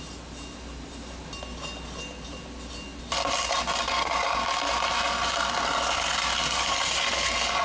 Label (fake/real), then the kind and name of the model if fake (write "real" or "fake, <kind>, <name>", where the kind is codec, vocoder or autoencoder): real